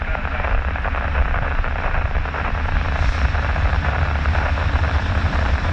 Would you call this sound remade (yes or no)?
yes